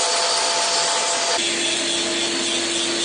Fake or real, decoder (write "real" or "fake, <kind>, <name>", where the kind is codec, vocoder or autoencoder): real